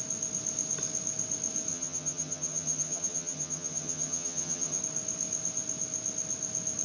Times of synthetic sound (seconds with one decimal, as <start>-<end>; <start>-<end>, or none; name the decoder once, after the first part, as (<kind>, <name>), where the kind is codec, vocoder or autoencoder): 1.7-4.8 (vocoder, HiFi-GAN)